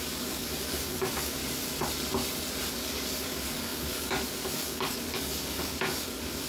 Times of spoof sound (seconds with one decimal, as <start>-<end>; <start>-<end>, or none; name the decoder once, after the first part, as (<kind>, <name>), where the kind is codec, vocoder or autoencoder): 0.0-1.4 (codec, DAC); 2.7-6.5